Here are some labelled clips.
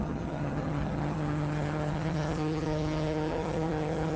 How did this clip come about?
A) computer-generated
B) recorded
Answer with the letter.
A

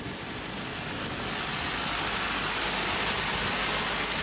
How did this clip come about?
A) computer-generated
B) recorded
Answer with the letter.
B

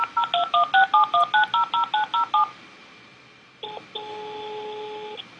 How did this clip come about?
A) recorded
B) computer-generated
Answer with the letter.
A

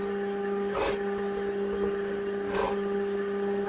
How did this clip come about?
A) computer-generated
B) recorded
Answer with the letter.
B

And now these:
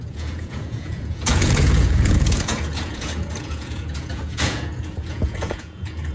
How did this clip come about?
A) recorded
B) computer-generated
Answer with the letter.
B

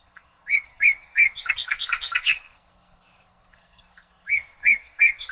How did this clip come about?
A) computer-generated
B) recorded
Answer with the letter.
A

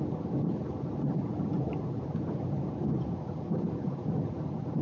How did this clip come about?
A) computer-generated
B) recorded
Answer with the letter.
B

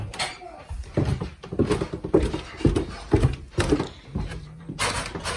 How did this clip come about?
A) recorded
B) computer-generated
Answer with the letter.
A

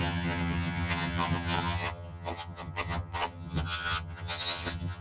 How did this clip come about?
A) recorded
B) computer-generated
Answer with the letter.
B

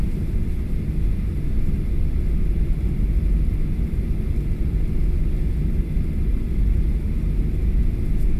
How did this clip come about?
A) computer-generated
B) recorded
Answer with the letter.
B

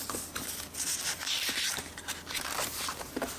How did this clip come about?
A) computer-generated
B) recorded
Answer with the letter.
B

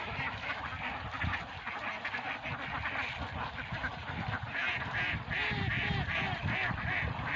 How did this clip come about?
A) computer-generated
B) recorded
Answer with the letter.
B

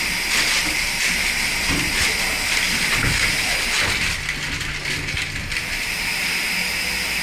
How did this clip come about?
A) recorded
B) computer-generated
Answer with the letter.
A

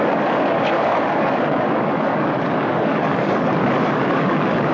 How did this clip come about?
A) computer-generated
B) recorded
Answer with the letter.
A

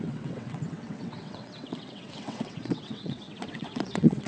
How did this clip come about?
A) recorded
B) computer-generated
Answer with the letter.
B